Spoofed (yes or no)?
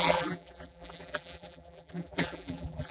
yes